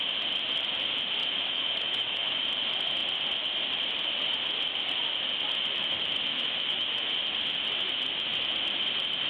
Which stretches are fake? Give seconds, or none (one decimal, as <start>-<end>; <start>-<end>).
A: 1.2-2.4; 6.3-7.1